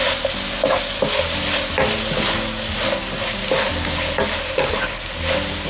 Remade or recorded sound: recorded